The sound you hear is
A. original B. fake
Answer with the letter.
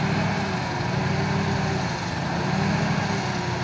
A